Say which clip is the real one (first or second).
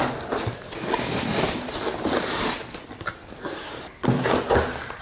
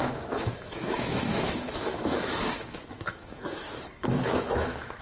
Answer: first